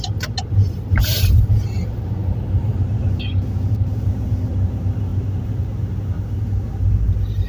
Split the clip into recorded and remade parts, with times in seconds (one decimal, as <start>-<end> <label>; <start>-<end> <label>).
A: 0.0-7.5 recorded